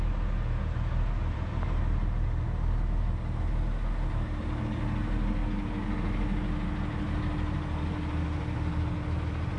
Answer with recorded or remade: recorded